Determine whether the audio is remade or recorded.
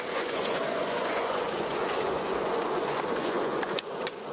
remade